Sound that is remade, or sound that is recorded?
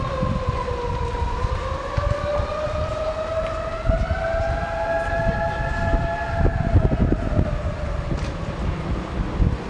recorded